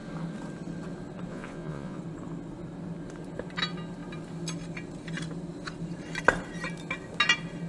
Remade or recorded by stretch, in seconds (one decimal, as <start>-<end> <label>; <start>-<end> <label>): 0.0-1.3 recorded; 1.3-2.0 remade; 2.0-7.7 recorded